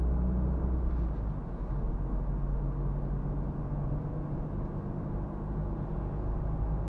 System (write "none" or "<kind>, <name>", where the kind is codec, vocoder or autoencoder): none